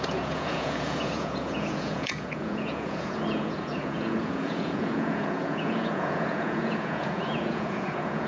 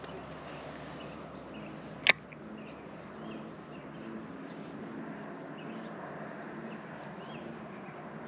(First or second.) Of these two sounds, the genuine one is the second